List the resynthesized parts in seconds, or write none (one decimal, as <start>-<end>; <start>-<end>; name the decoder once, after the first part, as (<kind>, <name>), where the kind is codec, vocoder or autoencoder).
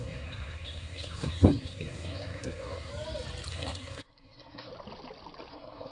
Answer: 0.0-2.9 (codec, SNAC); 3.5-4.7; 5.5-5.9